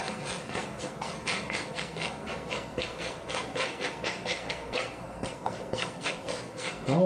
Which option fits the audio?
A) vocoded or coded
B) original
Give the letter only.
A